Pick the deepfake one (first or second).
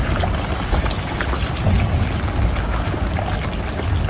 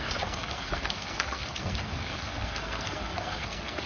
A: second